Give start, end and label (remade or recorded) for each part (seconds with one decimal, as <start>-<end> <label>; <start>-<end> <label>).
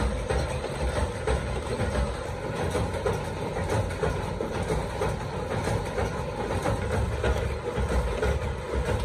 0.0-9.0 recorded